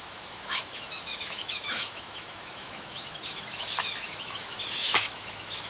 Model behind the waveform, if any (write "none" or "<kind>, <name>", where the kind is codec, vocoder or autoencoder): autoencoder, DAC-VAE